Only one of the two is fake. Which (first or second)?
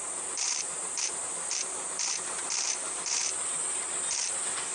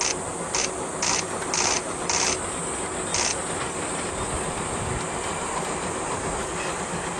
first